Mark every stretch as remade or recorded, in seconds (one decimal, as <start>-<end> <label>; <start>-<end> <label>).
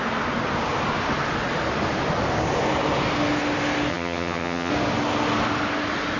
0.0-3.9 recorded; 3.9-4.7 remade; 4.7-6.2 recorded